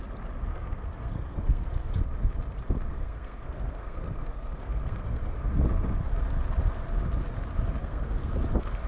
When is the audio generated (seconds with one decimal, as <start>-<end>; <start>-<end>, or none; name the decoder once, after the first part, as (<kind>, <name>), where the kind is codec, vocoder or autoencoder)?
0.5-2.0 (codec, SNAC); 2.9-5.5; 7.8-8.3